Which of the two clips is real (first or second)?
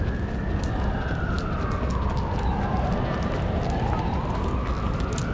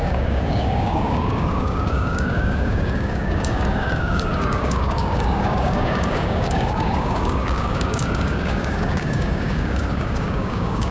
first